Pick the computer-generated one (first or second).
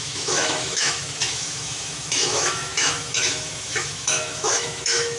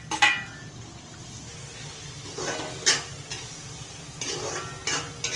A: first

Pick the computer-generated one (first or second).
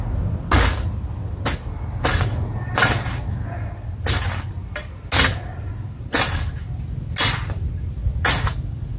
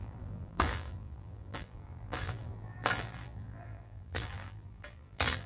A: second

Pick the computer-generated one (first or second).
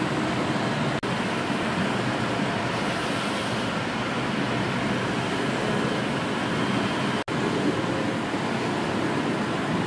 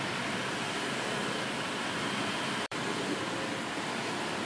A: second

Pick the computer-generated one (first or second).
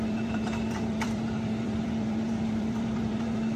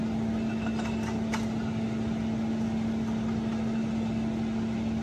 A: first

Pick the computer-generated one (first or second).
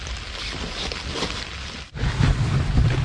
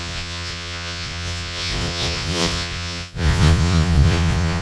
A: second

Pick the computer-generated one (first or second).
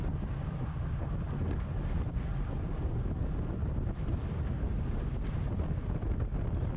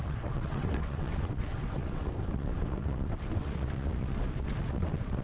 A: second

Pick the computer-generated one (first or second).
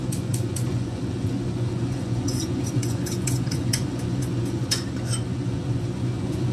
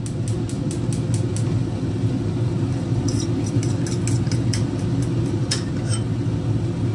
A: first